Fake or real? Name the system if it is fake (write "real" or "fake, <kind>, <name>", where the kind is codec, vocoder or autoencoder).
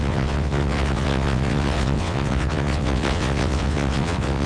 fake, vocoder, WaveNeXt